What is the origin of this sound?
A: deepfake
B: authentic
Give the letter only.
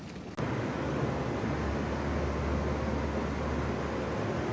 B